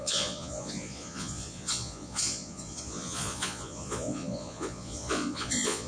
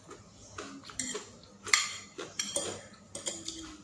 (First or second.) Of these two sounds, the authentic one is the second